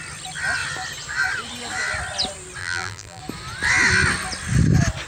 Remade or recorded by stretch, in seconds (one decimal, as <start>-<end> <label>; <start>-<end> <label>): 0.0-2.6 recorded; 2.6-3.2 remade; 3.2-5.1 recorded